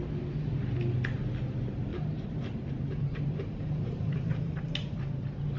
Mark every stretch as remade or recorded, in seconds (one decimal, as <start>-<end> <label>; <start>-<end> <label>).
0.0-1.9 recorded; 1.9-5.6 remade